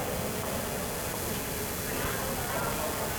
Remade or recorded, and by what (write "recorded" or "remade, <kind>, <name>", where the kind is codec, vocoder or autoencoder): recorded